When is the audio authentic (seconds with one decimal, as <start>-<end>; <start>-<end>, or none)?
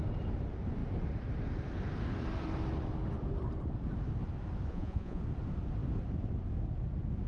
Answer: 0.0-4.7; 5.2-7.3